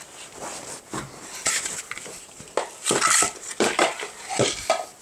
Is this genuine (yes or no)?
yes